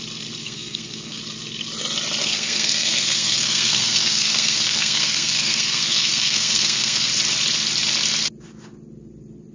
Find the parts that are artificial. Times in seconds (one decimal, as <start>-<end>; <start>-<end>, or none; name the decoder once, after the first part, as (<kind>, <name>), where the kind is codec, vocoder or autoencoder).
0.4-1.2 (codec, SNAC); 2.2-7.1